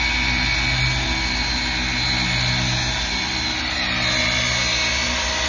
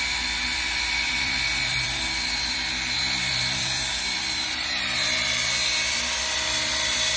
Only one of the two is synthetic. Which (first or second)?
second